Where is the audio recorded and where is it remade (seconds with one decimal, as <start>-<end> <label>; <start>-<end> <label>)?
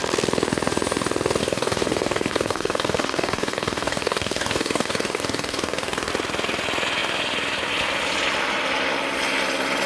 0.0-1.4 recorded; 1.4-6.1 remade; 6.1-9.9 recorded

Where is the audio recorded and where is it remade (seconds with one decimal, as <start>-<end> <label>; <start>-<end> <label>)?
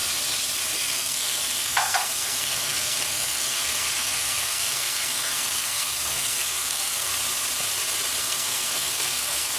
0.0-0.9 recorded; 0.9-7.1 remade; 7.1-8.2 recorded; 8.2-9.6 remade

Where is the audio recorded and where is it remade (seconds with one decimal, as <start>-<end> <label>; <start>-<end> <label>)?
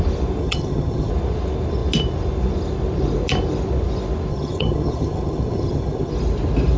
0.0-0.4 recorded; 0.4-1.1 remade; 1.1-4.3 recorded; 4.3-6.1 remade; 6.1-6.8 recorded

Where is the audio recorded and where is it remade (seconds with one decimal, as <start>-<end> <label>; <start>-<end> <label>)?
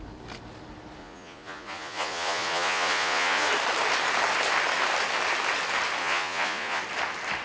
0.0-1.0 recorded; 1.0-3.5 remade; 3.5-6.0 recorded; 6.0-6.8 remade; 6.8-7.4 recorded